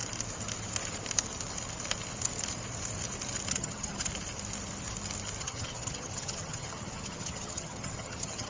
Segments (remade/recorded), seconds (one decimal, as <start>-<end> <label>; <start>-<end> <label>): 0.0-3.5 recorded; 3.5-4.1 remade; 4.1-5.4 recorded; 5.4-8.5 remade